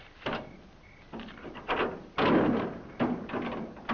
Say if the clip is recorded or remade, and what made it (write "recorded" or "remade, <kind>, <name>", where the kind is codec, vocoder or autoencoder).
recorded